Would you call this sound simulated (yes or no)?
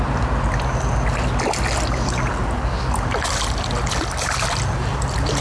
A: no